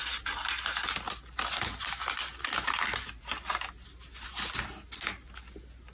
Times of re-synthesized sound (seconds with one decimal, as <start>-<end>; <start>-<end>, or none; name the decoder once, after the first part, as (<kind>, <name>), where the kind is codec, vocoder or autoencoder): none